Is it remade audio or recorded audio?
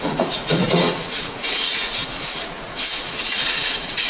remade